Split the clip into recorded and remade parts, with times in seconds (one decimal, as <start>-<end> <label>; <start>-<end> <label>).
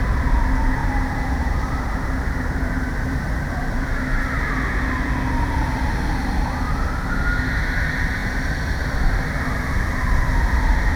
0.0-0.8 recorded; 0.8-4.5 remade; 4.5-8.2 recorded; 8.2-9.6 remade; 9.6-11.0 recorded